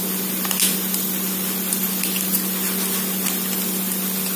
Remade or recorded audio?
recorded